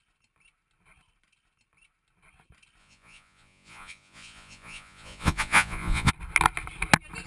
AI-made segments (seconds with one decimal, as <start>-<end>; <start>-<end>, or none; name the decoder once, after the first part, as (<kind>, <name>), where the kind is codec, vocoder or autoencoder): 2.8-6.1 (vocoder, Vocos)